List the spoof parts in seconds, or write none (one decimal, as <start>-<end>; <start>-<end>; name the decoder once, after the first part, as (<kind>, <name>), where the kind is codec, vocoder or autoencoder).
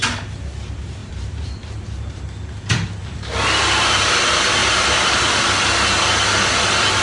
1.0-2.2 (vocoder, BigVGAN v2); 4.6-5.2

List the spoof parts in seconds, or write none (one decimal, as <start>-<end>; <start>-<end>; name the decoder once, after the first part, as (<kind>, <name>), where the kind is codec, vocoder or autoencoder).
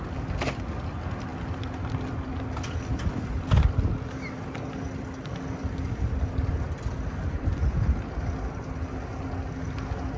none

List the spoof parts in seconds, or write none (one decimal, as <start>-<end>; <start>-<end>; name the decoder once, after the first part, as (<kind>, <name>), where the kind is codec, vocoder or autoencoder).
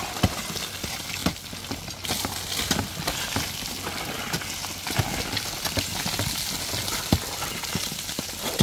none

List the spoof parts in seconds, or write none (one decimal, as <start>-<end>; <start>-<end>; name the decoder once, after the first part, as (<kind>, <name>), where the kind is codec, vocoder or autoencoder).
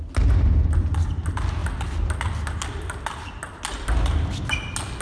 none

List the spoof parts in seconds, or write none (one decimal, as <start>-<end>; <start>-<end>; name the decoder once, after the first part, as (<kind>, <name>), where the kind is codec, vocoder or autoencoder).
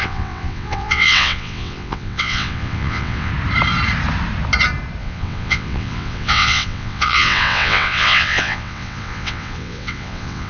0.0-3.3 (vocoder, WaveNeXt); 5.0-10.5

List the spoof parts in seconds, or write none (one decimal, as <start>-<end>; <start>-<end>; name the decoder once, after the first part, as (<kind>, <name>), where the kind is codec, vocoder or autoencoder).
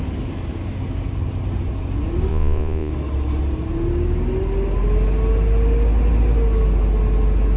2.3-2.9 (vocoder, Vocos)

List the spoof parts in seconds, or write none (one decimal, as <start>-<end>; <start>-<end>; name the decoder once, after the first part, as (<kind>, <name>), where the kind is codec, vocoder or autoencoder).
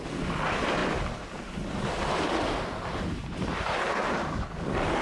none